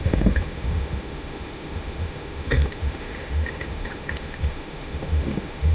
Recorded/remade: remade